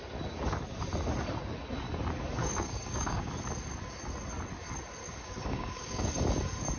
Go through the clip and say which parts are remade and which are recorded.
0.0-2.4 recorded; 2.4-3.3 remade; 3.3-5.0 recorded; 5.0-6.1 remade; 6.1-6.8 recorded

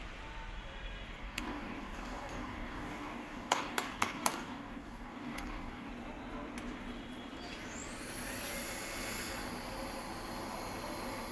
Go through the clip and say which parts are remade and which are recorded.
0.0-1.2 recorded; 1.2-5.9 remade; 5.9-11.3 recorded